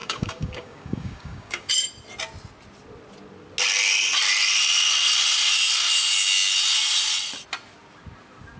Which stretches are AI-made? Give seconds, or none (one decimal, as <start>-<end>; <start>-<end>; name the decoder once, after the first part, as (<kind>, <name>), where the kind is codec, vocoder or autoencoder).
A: 0.0-1.7 (codec, DAC)